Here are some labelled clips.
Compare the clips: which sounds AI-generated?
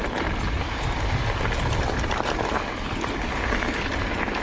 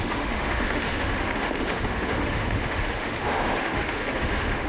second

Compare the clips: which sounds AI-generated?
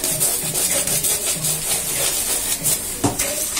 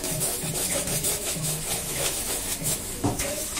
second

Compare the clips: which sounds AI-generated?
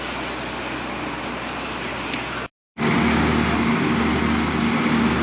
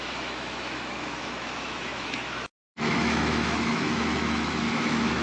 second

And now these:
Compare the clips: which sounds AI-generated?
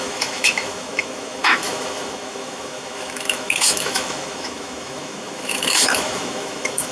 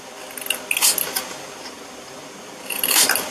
first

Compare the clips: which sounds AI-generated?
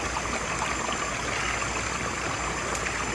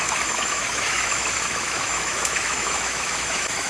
second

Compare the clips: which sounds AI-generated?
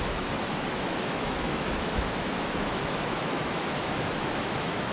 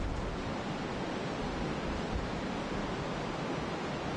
first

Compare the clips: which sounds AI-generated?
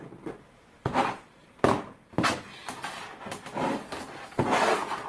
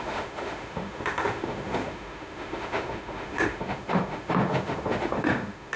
second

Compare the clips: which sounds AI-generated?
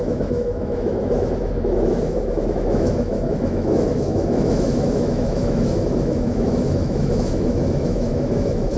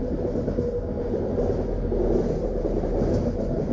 first